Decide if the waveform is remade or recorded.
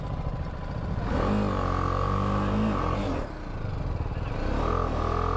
recorded